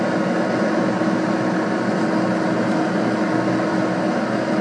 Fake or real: real